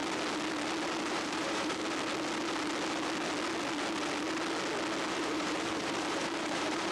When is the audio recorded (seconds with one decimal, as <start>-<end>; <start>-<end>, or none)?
0.0-1.1; 1.8-5.1